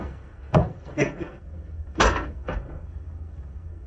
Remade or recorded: remade